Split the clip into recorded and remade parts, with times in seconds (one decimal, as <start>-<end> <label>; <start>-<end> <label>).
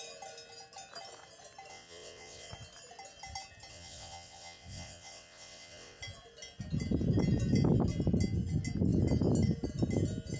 0.0-1.7 recorded; 1.7-2.5 remade; 2.5-3.7 recorded; 3.7-6.0 remade; 6.0-10.4 recorded